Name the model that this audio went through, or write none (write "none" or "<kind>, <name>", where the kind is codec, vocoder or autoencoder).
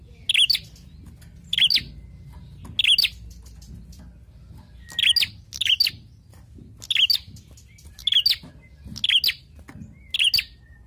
none